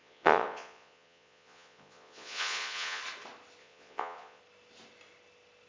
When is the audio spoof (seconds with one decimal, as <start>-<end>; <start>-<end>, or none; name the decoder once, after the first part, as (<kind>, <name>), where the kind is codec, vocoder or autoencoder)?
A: 0.0-3.0 (vocoder, Vocos); 3.6-4.4